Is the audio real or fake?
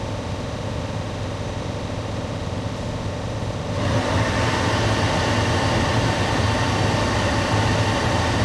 real